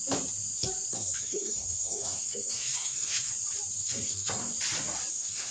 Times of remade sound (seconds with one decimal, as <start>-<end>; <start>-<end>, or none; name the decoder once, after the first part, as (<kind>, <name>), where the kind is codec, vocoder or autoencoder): 0.9-3.3 (codec, SNAC); 3.8-4.5; 5.1-5.5